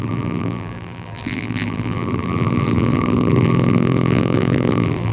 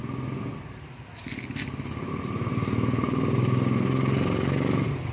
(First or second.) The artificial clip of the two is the first